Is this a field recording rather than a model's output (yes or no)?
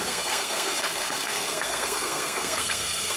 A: no